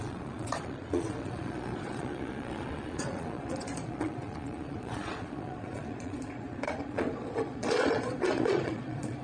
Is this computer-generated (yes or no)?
yes